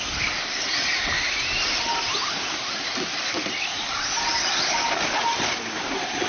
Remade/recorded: recorded